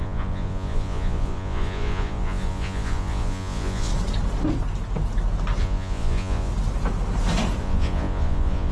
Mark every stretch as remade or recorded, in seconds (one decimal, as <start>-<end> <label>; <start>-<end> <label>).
0.0-3.9 remade; 3.9-5.6 recorded; 5.6-6.5 remade; 6.5-7.6 recorded; 7.6-8.7 remade